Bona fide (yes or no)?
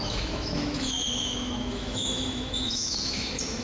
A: no